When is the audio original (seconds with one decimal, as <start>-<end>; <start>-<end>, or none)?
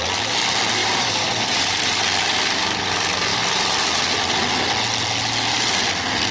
0.0-0.8; 2.0-6.3